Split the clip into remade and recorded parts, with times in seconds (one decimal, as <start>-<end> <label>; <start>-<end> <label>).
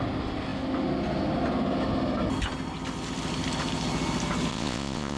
0.0-4.5 recorded; 4.5-5.2 remade